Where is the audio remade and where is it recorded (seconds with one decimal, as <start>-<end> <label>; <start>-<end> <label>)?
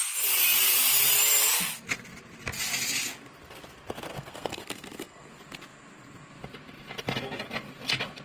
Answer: 0.0-4.1 recorded; 4.1-5.3 remade; 5.3-8.2 recorded